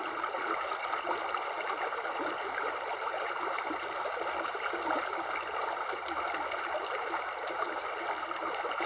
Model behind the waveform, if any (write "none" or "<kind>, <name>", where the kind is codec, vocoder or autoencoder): none